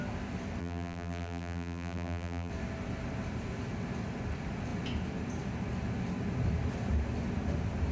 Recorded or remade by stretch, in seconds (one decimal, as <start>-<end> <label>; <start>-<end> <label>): 0.0-0.6 recorded; 0.6-2.5 remade; 2.5-7.9 recorded